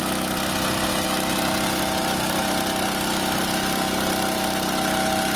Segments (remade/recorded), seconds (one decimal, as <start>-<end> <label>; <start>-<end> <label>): 0.0-5.4 recorded